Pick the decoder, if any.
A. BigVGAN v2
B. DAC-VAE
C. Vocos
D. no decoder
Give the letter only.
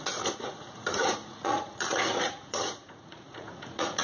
C